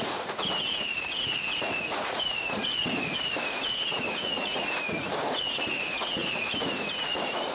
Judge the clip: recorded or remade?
remade